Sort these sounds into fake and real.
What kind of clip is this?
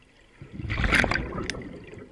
real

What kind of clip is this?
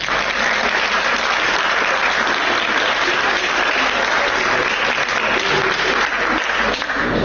real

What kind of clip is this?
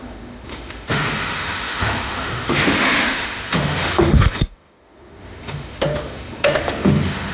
fake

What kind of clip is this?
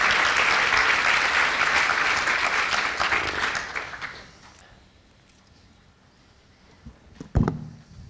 real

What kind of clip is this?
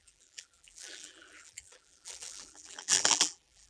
fake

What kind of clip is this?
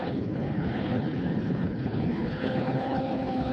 fake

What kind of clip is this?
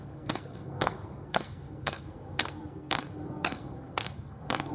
fake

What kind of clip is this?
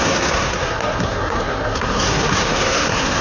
fake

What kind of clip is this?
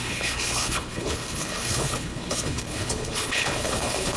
fake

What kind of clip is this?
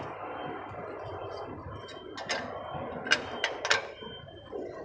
real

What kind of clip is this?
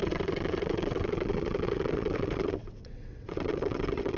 fake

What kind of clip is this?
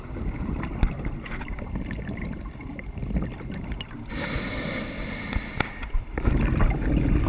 real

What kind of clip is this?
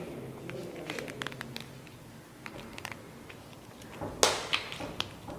real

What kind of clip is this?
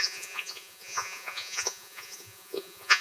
fake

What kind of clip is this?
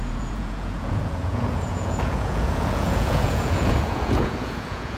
fake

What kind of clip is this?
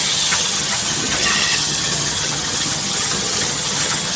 fake